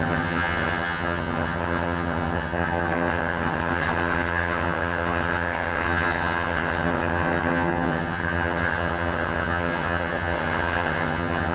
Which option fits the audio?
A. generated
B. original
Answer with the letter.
A